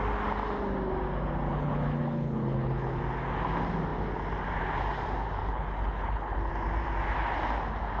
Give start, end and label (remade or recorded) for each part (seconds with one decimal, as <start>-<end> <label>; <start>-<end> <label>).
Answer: 0.0-1.5 recorded; 1.5-3.0 remade; 3.0-5.4 recorded; 5.4-6.5 remade; 6.5-8.0 recorded